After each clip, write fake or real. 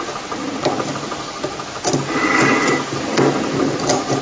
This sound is real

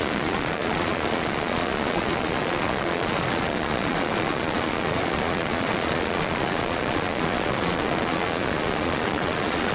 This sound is fake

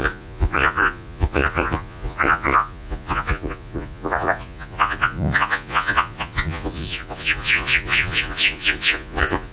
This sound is fake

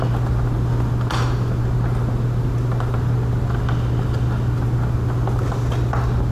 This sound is real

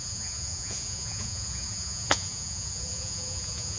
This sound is fake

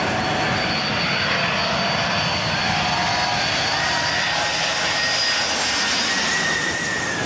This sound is real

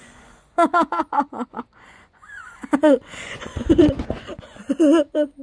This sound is fake